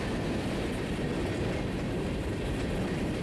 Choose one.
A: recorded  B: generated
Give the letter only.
A